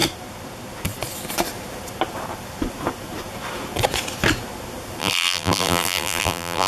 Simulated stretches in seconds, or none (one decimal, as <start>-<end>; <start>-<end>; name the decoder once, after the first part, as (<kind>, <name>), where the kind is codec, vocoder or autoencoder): 5.0-6.7 (vocoder, BigVGAN v2)